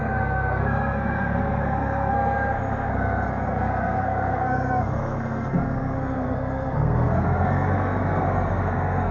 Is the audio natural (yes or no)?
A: no